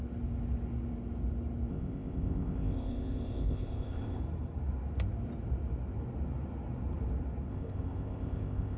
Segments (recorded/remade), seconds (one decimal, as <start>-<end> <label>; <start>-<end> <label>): 0.0-1.7 recorded; 1.7-4.2 remade; 4.2-7.5 recorded; 7.5-8.8 remade